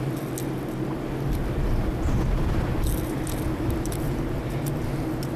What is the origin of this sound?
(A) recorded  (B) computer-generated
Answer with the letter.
A